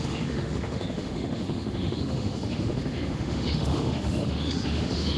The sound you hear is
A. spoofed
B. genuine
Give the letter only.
A